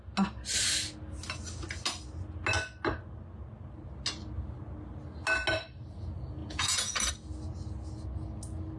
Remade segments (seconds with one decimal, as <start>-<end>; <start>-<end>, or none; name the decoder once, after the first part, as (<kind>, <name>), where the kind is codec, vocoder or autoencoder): 6.4-7.1 (vocoder, Vocos)